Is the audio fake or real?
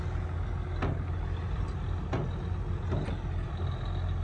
real